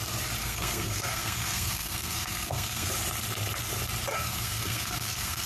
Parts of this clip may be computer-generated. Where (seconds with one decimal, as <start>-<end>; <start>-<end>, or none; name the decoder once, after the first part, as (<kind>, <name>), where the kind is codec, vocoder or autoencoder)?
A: 0.4-2.9 (codec, SNAC); 4.1-5.5